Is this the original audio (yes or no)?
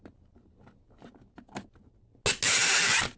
yes